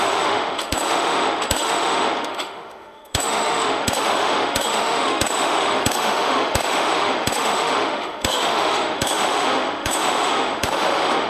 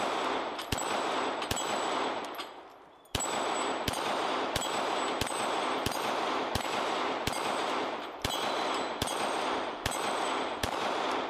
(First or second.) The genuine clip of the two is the second